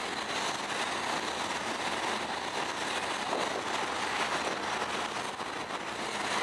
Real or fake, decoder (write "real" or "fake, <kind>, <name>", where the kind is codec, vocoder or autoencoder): real